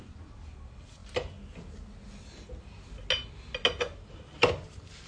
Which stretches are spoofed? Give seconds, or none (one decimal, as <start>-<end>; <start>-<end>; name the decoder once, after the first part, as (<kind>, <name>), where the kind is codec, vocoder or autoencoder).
none